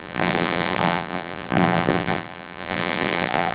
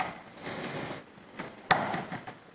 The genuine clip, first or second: second